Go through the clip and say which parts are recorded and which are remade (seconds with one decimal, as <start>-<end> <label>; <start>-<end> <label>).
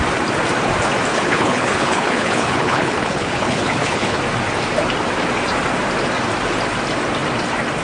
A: 0.0-1.1 recorded; 1.1-4.2 remade; 4.2-7.8 recorded